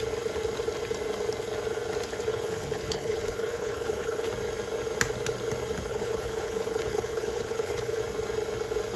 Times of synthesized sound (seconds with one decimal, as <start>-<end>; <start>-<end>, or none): 2.3-4.3; 5.9-8.0